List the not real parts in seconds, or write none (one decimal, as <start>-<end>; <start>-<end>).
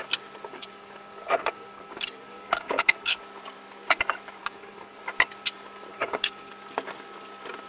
0.5-3.2; 4.4-5.0; 5.9-6.5